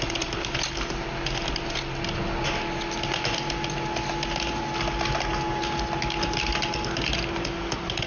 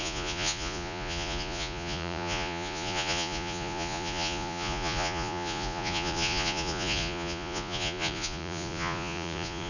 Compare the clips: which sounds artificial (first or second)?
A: second